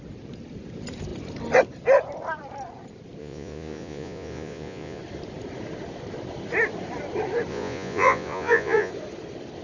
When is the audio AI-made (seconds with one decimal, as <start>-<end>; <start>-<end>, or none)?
3.2-5.0; 7.5-8.9